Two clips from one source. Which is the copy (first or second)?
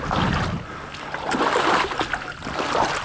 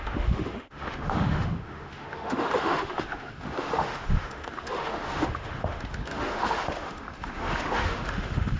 second